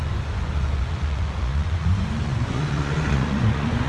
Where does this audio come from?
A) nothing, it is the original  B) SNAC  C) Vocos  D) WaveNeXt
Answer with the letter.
C